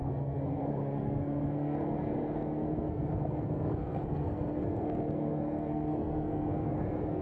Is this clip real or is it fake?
fake